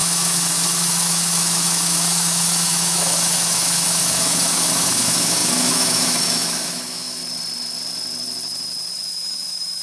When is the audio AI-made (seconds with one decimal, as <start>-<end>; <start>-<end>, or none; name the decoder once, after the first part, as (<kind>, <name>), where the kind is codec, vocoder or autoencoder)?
0.0-7.2 (autoencoder, DAC-VAE); 8.9-9.8